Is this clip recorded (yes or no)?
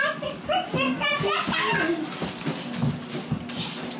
yes